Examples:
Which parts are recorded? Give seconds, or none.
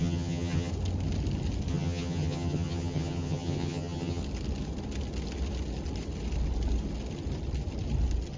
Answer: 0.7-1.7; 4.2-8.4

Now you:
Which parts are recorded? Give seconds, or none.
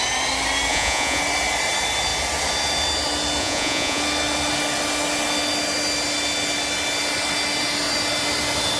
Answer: 0.0-0.7; 1.2-3.4; 4.0-8.8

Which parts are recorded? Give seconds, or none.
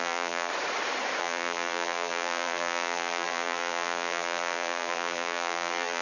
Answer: 0.5-1.2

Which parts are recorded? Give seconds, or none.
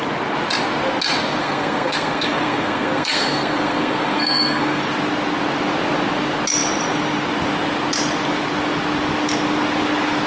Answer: 0.0-1.4; 4.8-10.3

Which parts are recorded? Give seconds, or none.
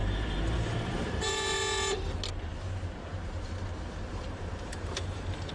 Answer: 1.6-4.1